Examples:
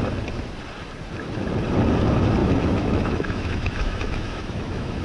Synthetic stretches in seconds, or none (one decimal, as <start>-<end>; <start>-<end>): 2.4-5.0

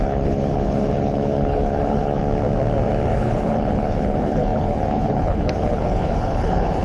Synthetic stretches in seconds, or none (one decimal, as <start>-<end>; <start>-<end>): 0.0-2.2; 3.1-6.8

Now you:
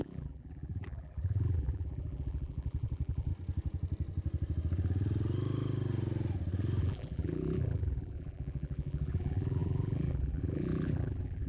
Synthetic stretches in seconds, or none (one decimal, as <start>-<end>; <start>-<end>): 0.0-3.3; 6.8-11.5